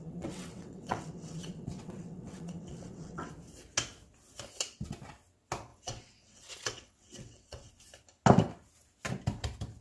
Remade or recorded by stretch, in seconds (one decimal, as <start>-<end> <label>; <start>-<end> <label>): 0.0-3.3 remade; 3.3-5.7 recorded; 5.7-7.7 remade; 7.7-9.8 recorded